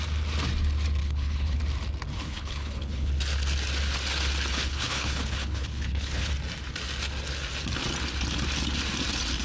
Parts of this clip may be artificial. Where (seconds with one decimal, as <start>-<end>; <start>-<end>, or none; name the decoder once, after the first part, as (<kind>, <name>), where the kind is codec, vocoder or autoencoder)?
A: 1.0-1.6 (codec, HILCodec); 2.1-3.1; 4.5-6.3